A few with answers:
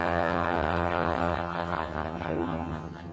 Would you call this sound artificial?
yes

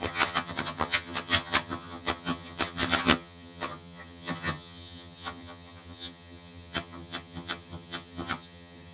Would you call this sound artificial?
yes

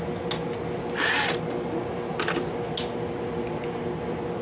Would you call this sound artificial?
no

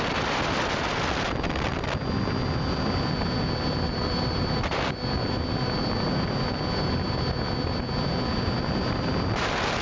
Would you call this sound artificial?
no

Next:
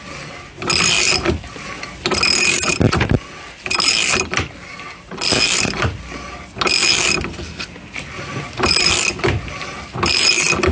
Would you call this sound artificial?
no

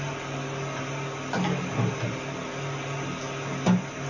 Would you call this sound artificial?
no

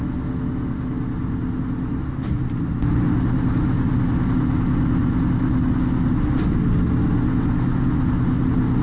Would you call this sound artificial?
no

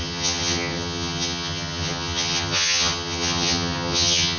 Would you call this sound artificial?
yes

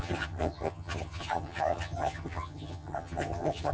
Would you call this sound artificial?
yes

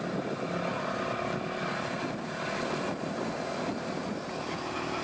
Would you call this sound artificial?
no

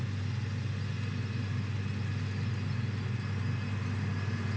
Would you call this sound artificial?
no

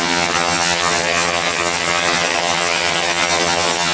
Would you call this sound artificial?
yes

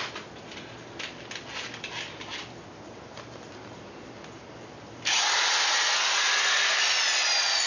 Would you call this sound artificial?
no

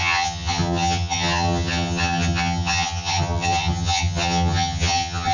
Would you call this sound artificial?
yes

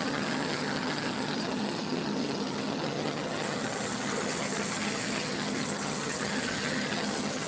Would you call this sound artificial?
yes